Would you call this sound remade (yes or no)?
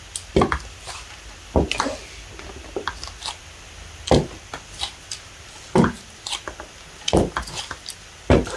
no